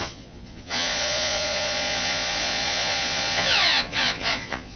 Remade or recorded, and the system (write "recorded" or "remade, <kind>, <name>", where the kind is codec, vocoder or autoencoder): remade, vocoder, Vocos